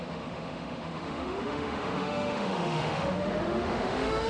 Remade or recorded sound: remade